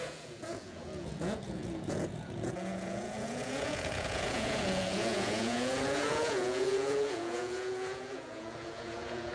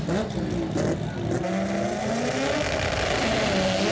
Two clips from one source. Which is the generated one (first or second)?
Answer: first